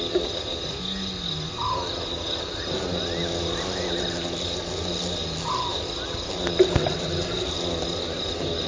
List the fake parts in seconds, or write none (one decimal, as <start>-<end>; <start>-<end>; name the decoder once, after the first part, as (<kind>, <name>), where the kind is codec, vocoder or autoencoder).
none